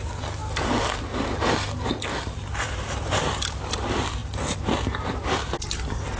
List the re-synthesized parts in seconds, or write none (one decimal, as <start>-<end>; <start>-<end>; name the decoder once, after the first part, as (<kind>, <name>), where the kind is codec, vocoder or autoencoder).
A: 0.0-6.2 (vocoder, BigVGAN v2)